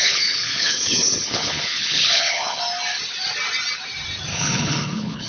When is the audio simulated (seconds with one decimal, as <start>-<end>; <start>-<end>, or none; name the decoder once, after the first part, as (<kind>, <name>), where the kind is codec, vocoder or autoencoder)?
0.0-2.6 (codec, HILCodec); 4.3-5.3